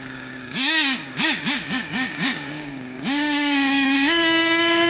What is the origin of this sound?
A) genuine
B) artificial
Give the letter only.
B